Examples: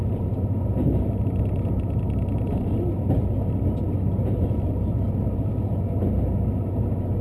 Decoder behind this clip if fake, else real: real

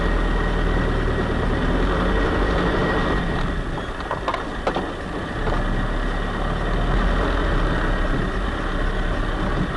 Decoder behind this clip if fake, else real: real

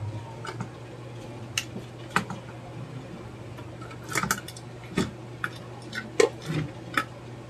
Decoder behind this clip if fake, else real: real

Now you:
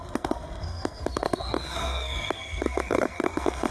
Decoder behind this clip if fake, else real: fake, codec, SNAC